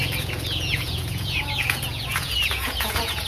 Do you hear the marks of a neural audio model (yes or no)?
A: yes